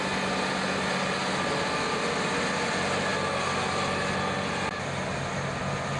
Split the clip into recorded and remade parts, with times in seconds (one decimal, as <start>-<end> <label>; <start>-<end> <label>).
0.0-6.0 recorded